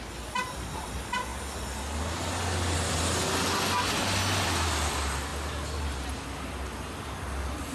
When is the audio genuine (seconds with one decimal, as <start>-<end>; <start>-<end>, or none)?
0.0-7.7